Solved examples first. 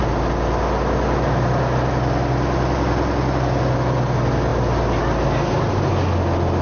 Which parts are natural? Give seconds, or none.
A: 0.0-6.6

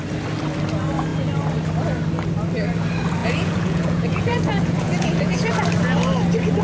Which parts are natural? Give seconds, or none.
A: 0.0-3.2; 5.5-6.6